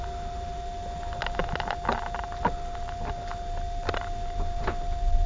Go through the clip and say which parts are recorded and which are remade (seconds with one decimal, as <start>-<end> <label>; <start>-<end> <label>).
0.0-5.3 recorded